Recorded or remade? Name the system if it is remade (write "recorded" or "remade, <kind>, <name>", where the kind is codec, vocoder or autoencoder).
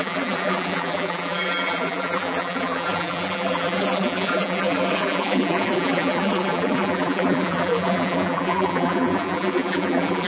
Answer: remade, vocoder, BigVGAN v2